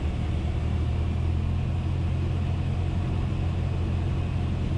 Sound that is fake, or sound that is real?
real